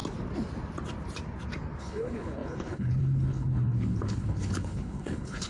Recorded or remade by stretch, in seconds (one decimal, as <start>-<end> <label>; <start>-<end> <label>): 0.0-1.8 recorded; 1.8-5.5 remade

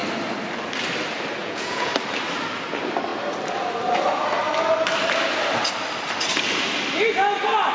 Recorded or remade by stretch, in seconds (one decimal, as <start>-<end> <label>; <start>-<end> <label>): 0.0-1.4 recorded; 1.4-1.9 remade; 1.9-7.7 recorded

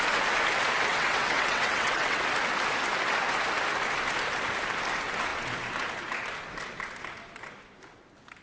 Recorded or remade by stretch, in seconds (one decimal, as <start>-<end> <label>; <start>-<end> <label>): 0.0-0.9 recorded; 0.9-2.2 remade; 2.2-8.4 recorded

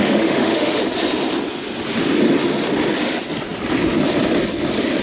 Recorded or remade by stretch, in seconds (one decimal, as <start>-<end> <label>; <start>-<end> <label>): 0.0-0.8 remade; 0.8-5.0 recorded

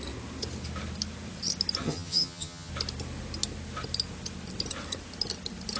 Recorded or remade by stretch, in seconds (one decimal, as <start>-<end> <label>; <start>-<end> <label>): 0.0-1.8 recorded; 1.8-2.7 remade; 2.7-5.8 recorded

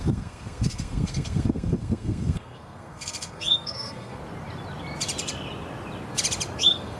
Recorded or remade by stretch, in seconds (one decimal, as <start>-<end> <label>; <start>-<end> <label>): 0.0-4.2 remade; 4.2-6.6 recorded; 6.6-7.0 remade

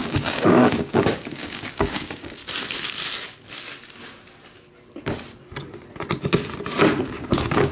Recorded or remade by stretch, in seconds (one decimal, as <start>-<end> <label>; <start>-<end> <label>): 0.0-2.4 remade; 2.4-7.0 recorded; 7.0-7.7 remade

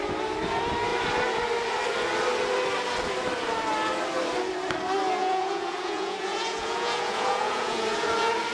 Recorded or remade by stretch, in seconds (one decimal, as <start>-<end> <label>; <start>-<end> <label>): 0.0-5.2 recorded; 5.2-8.1 remade; 8.1-8.5 recorded